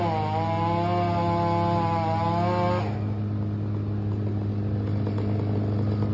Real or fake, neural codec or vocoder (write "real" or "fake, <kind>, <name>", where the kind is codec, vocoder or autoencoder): real